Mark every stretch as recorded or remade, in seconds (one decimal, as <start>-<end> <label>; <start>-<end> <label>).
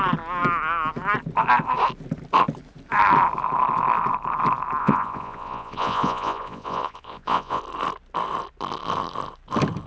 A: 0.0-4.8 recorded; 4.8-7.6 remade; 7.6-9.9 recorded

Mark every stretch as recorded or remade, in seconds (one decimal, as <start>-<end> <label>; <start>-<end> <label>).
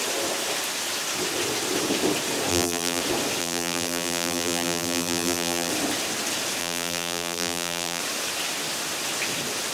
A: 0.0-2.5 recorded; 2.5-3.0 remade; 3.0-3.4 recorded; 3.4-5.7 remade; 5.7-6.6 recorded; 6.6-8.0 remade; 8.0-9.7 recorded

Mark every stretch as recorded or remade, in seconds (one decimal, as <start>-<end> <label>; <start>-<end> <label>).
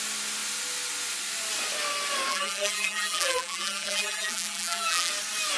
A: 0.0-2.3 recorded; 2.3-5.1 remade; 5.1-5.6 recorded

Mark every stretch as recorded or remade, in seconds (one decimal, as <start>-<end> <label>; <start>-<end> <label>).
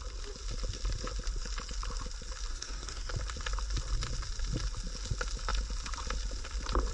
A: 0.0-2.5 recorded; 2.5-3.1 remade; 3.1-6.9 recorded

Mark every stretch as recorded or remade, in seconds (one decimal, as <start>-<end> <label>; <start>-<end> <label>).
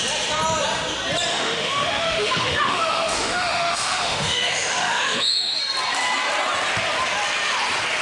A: 0.0-1.3 recorded; 1.3-5.6 remade; 5.6-8.0 recorded